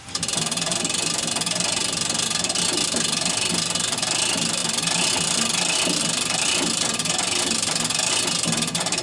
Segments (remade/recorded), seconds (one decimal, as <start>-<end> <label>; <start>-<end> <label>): 0.0-9.0 recorded